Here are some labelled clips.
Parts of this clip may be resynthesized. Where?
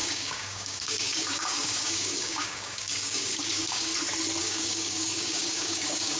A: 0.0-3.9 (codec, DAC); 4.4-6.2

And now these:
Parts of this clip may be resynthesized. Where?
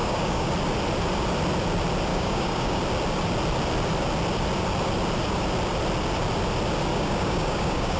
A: 0.0-0.5 (codec, DAC); 2.1-2.8; 6.9-8.0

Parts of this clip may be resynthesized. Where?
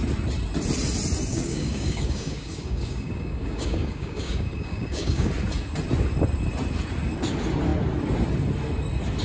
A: 1.3-5.3 (codec, DAC)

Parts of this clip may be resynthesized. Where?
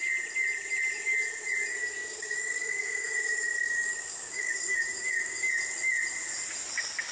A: 1.7-5.5 (codec, DAC)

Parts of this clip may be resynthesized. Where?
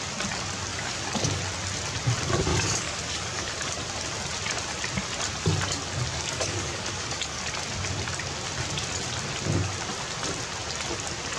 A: 0.7-1.4 (codec, DAC); 2.5-3.5; 6.1-7.4